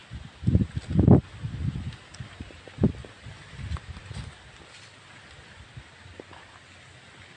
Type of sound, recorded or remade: recorded